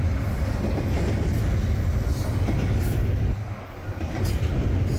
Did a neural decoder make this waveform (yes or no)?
no